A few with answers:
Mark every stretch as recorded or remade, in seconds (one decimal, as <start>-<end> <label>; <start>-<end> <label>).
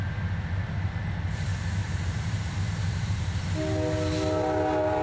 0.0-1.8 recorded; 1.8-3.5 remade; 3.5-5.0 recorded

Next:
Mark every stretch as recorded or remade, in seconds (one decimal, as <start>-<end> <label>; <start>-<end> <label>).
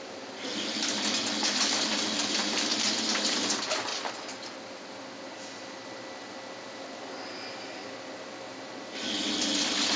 0.0-10.0 recorded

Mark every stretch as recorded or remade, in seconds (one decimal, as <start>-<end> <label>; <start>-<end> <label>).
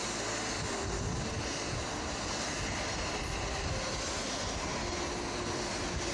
0.0-6.1 recorded